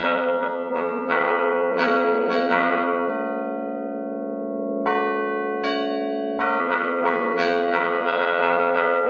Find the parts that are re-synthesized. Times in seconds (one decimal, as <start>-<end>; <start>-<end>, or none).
0.0-3.1; 6.6-9.1